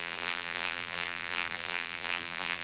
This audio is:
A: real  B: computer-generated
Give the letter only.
B